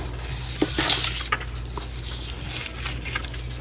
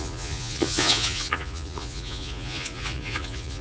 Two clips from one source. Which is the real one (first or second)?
first